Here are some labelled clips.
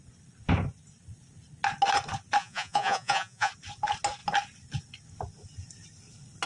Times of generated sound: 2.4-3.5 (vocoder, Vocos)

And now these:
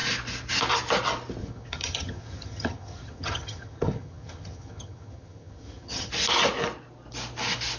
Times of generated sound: 1.4-6.1 (vocoder, HiFi-GAN)

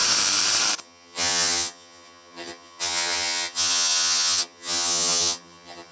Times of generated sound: 0.8-5.9 (vocoder, HiFi-GAN)

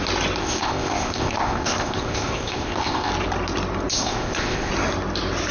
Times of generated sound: 0.4-3.1 (codec, ZipCodec); 3.9-4.7

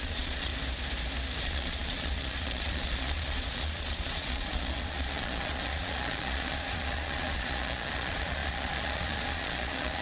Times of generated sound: 0.0-0.5 (vocoder, Vocos); 1.4-10.0

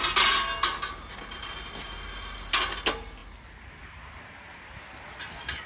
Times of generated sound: none

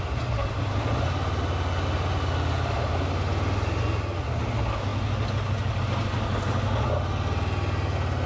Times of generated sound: none